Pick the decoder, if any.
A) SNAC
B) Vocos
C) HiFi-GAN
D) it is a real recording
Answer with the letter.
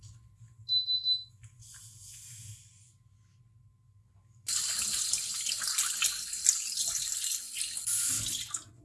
D